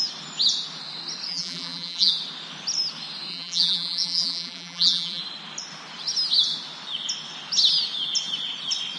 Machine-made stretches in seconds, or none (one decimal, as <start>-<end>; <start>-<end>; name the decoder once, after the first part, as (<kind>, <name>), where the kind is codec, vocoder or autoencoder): 1.3-2.1 (vocoder, BigVGAN v2); 3.3-5.2